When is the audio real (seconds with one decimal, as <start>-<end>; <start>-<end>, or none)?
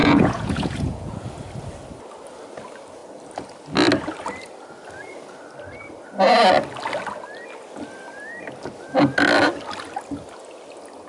1.1-11.1